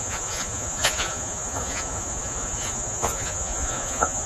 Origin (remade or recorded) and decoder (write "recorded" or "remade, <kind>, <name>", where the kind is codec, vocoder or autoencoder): remade, vocoder, Vocos